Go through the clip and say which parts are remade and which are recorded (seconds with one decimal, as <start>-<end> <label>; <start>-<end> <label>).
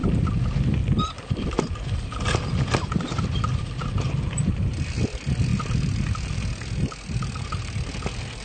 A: 0.0-8.4 recorded